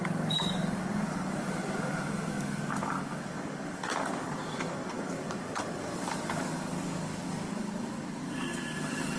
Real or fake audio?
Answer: fake